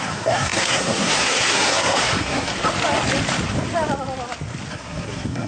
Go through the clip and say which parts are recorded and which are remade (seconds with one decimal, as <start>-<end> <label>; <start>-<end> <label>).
0.0-2.5 remade; 2.5-4.7 recorded; 4.7-5.5 remade